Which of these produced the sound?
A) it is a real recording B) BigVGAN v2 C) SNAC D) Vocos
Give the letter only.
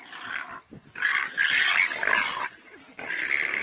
A